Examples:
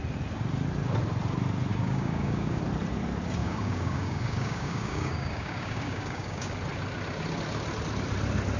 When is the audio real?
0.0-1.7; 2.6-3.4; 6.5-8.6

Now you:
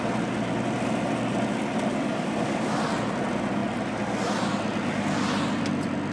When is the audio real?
0.0-1.9; 2.7-6.1

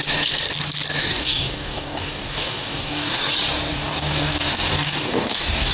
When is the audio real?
0.0-1.0; 3.2-3.7